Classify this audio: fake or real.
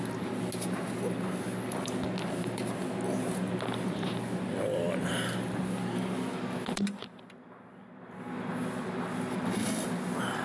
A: real